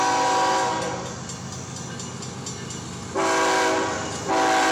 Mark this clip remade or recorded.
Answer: recorded